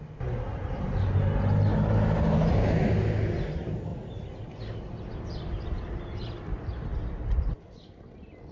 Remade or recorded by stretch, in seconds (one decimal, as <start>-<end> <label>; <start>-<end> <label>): 0.0-8.5 recorded